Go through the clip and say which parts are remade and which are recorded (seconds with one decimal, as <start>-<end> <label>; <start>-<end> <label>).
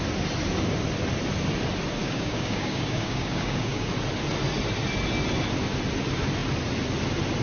0.0-2.0 recorded; 2.0-3.9 remade; 3.9-7.4 recorded